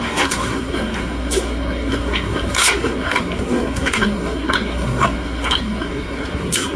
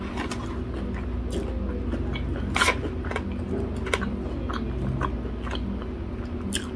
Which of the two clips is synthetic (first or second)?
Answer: first